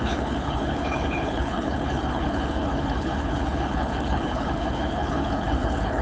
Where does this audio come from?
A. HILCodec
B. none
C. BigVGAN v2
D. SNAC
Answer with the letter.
A